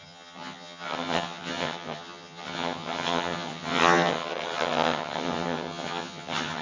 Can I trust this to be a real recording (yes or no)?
no